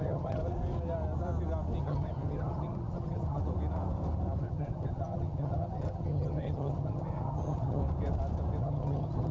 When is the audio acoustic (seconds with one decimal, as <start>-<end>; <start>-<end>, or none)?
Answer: 0.4-1.8; 3.4-4.4; 7.8-8.6